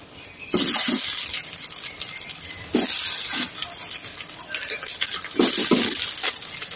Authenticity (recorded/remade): recorded